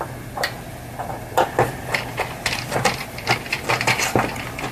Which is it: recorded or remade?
recorded